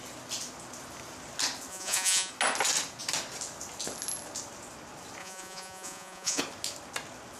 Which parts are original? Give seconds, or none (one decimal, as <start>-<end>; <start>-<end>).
0.0-1.7; 2.3-5.2; 6.4-7.4